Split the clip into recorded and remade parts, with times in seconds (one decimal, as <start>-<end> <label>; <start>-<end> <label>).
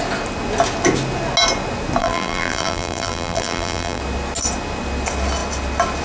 0.0-2.0 recorded; 2.0-4.0 remade; 4.0-6.0 recorded